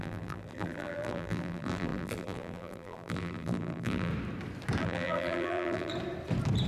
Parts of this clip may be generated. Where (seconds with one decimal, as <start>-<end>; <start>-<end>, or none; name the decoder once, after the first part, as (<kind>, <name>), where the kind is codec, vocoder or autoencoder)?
0.0-4.1 (vocoder, BigVGAN v2); 4.8-5.9